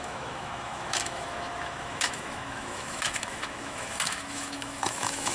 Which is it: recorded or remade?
remade